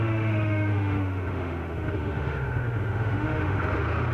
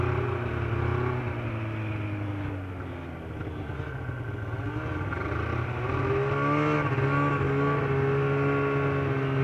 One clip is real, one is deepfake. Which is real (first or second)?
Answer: second